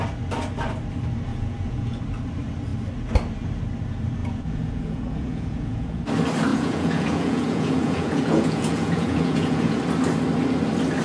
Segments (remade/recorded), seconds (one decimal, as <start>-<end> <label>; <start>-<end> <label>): 0.0-1.3 recorded; 1.3-2.0 remade; 2.0-4.2 recorded; 4.2-6.0 remade; 6.0-6.5 recorded; 6.5-9.8 remade; 9.8-11.0 recorded